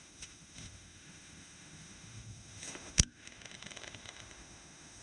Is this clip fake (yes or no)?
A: yes